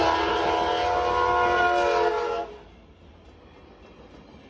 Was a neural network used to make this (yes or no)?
no